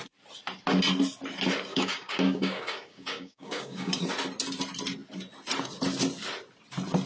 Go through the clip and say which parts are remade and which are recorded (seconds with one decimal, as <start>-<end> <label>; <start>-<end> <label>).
0.0-1.7 recorded; 1.7-4.0 remade; 4.0-7.1 recorded